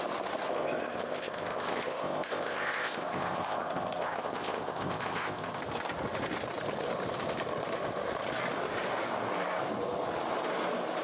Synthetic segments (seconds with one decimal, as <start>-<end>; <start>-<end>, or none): 0.5-5.6